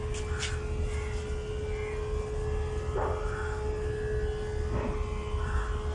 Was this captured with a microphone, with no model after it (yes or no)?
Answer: yes